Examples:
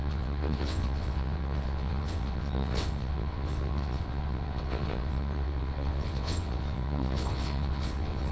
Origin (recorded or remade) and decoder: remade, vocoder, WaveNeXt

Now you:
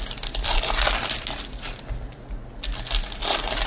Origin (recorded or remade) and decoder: recorded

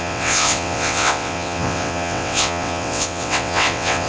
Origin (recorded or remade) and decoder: remade, vocoder, WaveNeXt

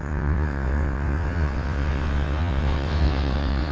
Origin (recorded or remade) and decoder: remade, vocoder, WaveNeXt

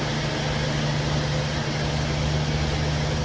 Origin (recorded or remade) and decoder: recorded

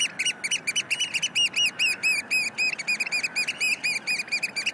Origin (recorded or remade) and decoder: recorded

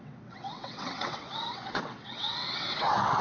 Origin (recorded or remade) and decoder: remade, vocoder, WaveNeXt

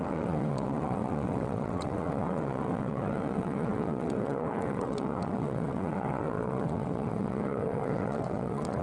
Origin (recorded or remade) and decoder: remade, vocoder, WaveNeXt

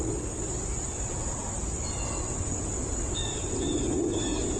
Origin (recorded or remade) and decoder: recorded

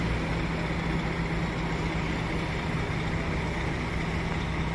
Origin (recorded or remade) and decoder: recorded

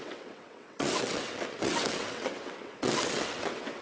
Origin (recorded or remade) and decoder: remade, vocoder, WaveNeXt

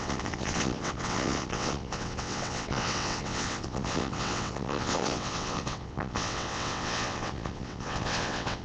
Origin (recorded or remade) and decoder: remade, vocoder, WaveNeXt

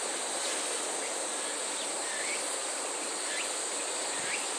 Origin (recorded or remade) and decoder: recorded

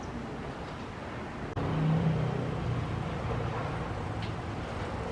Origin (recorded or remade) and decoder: recorded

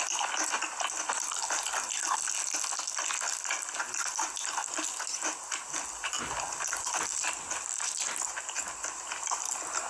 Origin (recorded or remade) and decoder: recorded